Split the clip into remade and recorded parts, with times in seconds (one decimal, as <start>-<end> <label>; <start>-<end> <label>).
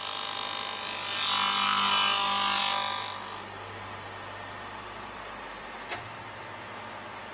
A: 0.0-7.3 recorded